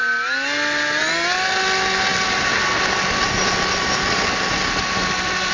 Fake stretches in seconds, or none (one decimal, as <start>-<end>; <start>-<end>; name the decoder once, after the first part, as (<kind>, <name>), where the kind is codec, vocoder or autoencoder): none